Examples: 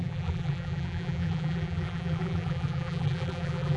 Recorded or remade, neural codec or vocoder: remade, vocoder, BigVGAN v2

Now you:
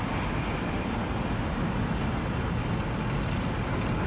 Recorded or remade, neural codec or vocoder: recorded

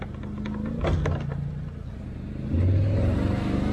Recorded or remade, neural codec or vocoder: recorded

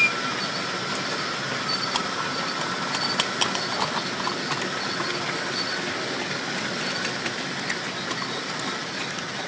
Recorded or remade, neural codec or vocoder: recorded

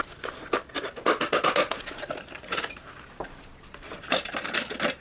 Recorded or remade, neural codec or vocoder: recorded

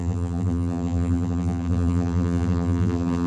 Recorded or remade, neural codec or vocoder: remade, vocoder, BigVGAN v2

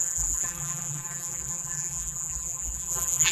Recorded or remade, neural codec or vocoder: remade, vocoder, BigVGAN v2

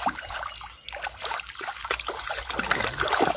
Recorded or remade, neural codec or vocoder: recorded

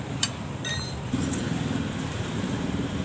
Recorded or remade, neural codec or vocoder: remade, vocoder, BigVGAN v2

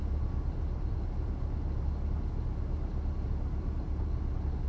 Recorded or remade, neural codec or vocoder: recorded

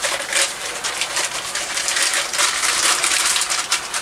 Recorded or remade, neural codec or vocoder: remade, vocoder, BigVGAN v2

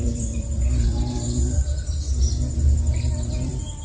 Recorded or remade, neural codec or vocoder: remade, vocoder, BigVGAN v2